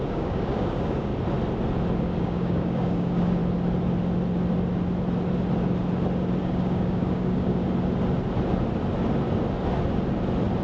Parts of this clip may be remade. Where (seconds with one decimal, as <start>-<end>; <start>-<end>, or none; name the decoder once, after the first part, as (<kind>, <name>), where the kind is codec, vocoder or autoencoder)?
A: 0.0-1.1 (codec, DAC); 2.0-3.4; 6.4-7.6